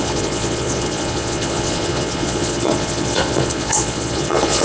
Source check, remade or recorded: remade